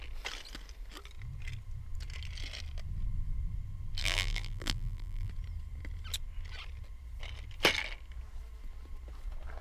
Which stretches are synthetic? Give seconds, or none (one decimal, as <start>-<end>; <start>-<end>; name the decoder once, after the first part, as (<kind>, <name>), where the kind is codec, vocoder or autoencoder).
4.0-5.3 (vocoder, BigVGAN v2)